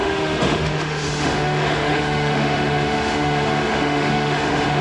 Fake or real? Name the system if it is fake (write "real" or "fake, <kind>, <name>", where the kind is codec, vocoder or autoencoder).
fake, autoencoder, DAC-VAE